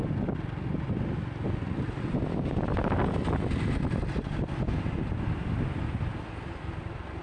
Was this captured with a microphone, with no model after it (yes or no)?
yes